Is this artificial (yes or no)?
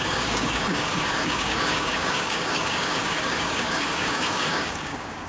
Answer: yes